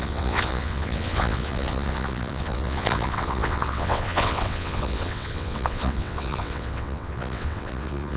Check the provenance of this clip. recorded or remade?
remade